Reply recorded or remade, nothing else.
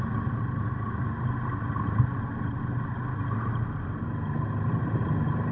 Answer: recorded